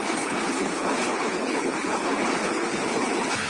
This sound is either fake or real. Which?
fake